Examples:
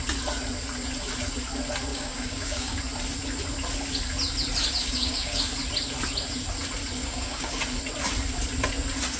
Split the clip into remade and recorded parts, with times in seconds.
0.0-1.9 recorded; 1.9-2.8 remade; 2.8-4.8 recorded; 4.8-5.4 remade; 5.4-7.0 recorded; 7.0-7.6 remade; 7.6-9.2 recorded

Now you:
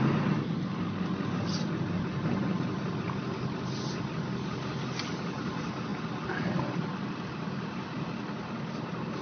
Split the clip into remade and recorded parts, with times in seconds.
0.0-9.2 recorded

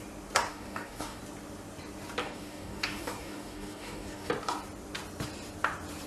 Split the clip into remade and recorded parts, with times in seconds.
0.0-0.5 recorded; 0.5-1.2 remade; 1.2-2.2 recorded; 2.2-4.3 remade; 4.3-6.1 recorded

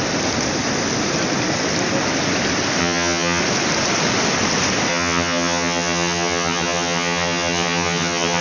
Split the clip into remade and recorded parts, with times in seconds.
0.0-2.8 recorded; 2.8-3.4 remade; 3.4-4.9 recorded; 4.9-8.4 remade

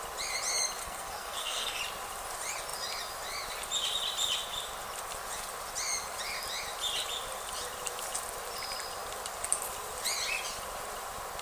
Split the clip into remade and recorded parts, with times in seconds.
0.0-0.8 recorded; 0.8-1.8 remade; 1.8-11.4 recorded

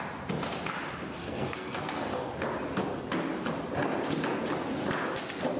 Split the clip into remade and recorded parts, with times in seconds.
0.0-1.2 recorded; 1.2-2.3 remade; 2.3-5.6 recorded